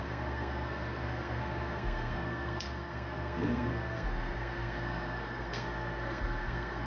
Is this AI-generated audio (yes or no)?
yes